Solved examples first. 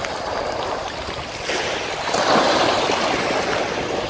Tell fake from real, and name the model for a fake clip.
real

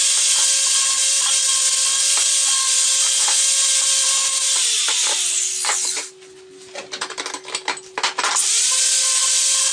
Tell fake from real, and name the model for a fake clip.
real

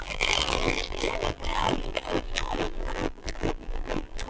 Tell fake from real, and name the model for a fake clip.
fake, vocoder, BigVGAN v2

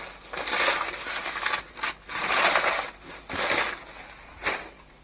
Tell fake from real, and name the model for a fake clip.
real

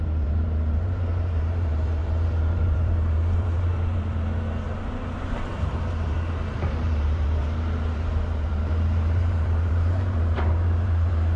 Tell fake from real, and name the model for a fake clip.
fake, vocoder, BigVGAN v2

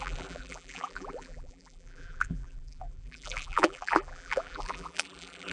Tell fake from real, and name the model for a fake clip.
fake, vocoder, BigVGAN v2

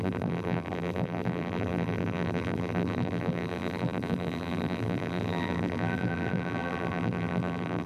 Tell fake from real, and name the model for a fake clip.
fake, vocoder, BigVGAN v2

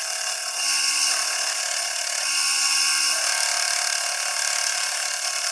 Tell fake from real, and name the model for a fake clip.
real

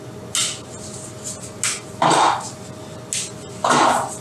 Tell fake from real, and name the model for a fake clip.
real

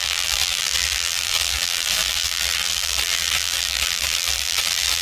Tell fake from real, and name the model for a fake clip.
fake, vocoder, BigVGAN v2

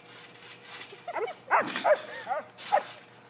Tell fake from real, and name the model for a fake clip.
real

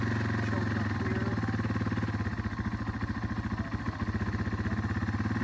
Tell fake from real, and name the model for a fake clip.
real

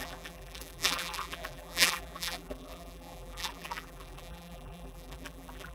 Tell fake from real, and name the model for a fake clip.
fake, vocoder, BigVGAN v2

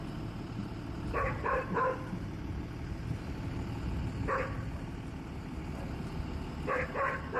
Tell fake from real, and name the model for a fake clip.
real